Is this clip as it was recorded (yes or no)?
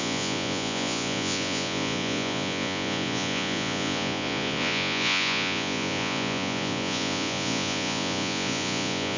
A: no